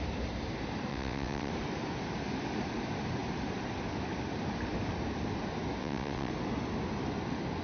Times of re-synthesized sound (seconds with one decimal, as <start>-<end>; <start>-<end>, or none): 0.9-1.5; 5.8-6.3